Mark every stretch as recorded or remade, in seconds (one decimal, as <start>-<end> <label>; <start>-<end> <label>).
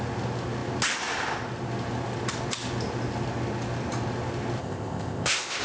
0.0-4.6 recorded; 4.6-5.6 remade